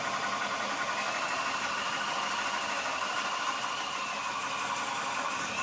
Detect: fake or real real